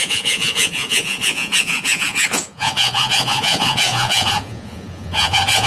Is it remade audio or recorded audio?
remade